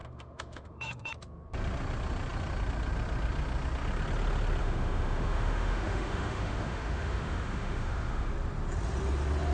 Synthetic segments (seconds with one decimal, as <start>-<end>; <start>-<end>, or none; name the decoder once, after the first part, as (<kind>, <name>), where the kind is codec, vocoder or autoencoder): 0.0-1.1 (autoencoder, DAC-VAE); 4.6-8.3